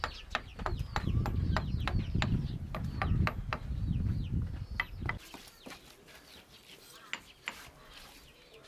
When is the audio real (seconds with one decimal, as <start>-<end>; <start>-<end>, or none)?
0.0-8.7